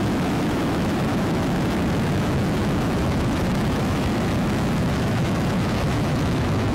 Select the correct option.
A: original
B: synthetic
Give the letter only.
B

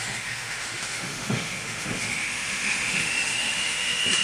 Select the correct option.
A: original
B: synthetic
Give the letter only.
B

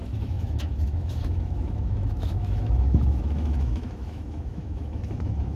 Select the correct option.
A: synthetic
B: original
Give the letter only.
A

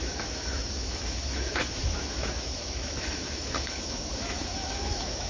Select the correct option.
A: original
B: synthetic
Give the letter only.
B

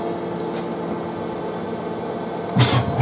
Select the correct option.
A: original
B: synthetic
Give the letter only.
A